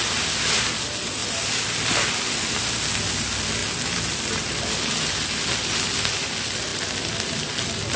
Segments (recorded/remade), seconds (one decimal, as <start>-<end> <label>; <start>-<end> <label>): 0.0-8.0 recorded